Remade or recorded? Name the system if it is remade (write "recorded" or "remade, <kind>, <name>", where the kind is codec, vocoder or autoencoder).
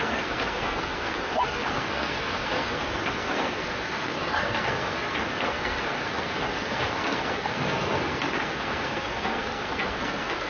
remade, codec, SNAC